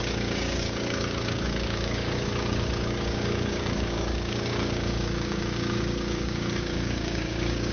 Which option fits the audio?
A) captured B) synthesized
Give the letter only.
B